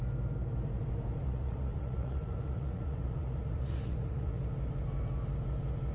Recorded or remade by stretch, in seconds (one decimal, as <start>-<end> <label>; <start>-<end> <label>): 0.0-1.2 recorded; 1.2-4.4 remade; 4.4-5.9 recorded